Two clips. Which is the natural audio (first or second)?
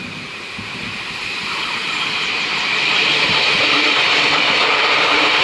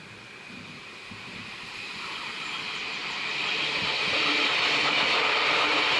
second